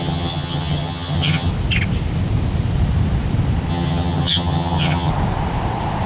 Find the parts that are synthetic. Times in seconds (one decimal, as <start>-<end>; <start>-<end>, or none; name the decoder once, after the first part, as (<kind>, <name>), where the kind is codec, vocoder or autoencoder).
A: 0.0-1.5 (vocoder, HiFi-GAN); 3.7-5.1